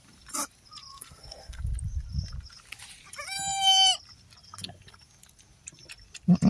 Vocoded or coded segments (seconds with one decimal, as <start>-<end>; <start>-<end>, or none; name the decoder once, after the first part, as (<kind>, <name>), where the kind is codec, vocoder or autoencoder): 0.9-1.6 (codec, SNAC)